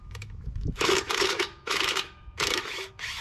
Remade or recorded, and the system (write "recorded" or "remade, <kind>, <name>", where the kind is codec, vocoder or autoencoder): remade, autoencoder, DAC-VAE